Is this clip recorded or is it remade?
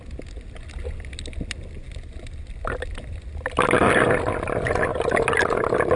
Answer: recorded